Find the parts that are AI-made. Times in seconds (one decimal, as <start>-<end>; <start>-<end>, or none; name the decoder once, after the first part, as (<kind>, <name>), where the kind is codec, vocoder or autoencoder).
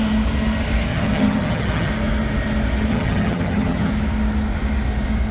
0.9-1.9 (vocoder, HiFi-GAN); 2.9-3.9